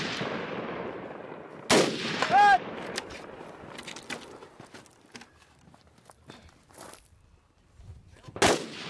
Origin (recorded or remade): recorded